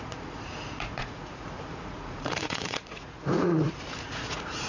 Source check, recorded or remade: remade